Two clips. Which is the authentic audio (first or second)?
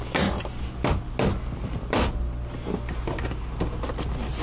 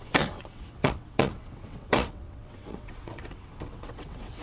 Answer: first